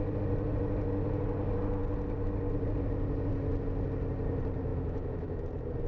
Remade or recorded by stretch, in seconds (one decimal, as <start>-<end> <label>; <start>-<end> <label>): 0.0-4.7 recorded; 4.7-5.4 remade; 5.4-5.9 recorded